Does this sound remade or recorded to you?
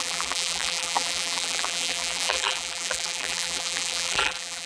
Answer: remade